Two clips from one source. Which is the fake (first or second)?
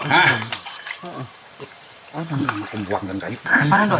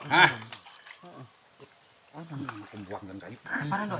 first